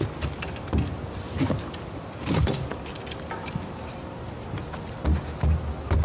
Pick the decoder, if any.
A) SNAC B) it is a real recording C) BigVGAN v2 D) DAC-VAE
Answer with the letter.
B